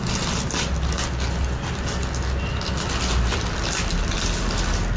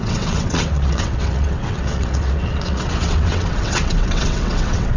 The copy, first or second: second